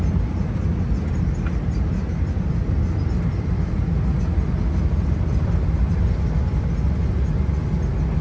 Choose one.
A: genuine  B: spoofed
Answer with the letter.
A